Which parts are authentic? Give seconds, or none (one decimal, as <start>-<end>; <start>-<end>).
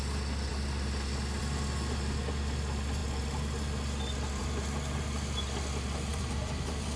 0.0-6.1